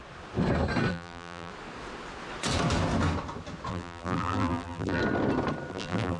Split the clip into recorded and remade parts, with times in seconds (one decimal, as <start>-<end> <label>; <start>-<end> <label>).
0.0-0.9 recorded; 0.9-1.5 remade; 1.5-3.7 recorded; 3.7-5.0 remade; 5.0-5.7 recorded; 5.7-6.2 remade